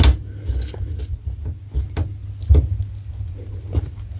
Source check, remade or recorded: recorded